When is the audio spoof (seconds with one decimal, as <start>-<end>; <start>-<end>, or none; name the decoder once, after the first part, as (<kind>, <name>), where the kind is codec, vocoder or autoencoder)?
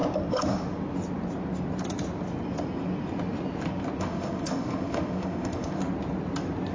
4.0-5.8 (autoencoder, DAC-VAE)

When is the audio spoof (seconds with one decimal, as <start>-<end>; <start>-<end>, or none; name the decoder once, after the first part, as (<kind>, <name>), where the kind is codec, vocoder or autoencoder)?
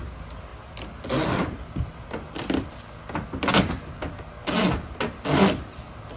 none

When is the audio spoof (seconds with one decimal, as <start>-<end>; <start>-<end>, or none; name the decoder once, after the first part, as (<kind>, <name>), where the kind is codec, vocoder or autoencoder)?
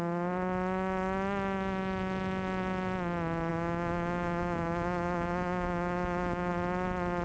3.5-6.5 (autoencoder, DAC-VAE)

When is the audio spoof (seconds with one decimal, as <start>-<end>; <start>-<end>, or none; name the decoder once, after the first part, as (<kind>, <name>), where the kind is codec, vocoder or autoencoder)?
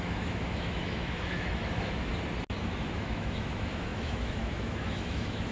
0.0-2.1 (autoencoder, DAC-VAE); 2.6-5.5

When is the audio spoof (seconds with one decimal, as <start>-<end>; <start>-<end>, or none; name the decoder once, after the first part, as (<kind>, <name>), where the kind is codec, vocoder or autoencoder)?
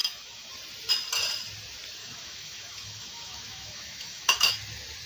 0.0-0.5 (autoencoder, DAC-VAE); 2.0-4.5